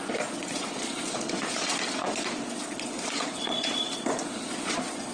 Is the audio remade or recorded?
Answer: remade